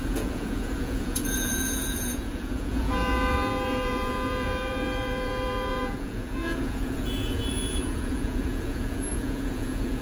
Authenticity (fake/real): fake